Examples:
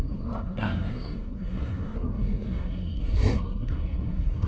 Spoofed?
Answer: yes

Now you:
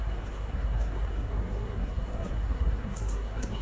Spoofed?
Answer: yes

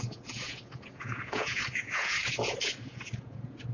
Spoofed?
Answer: yes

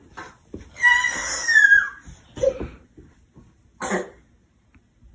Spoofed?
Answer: no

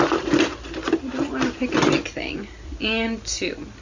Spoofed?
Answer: no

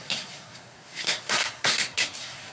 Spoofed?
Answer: yes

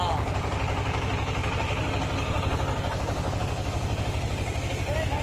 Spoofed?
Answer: yes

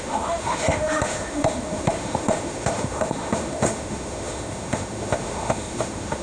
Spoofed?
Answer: yes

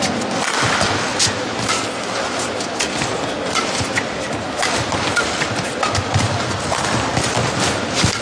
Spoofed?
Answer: no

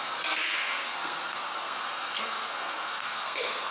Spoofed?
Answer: yes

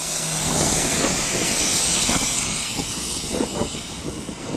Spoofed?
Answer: yes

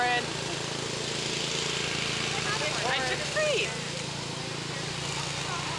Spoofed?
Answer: no